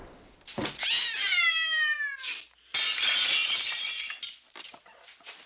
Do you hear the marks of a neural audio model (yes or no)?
no